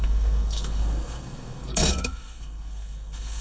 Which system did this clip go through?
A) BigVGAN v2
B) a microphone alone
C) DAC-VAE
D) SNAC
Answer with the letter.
D